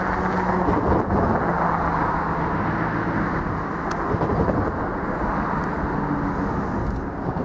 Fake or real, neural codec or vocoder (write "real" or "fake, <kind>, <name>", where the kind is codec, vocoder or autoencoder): real